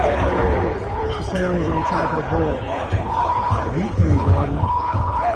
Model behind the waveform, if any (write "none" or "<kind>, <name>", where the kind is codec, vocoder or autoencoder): codec, HILCodec